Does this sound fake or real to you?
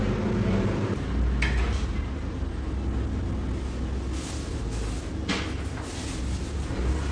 real